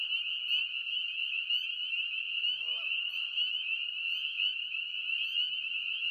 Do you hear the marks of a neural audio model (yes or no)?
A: no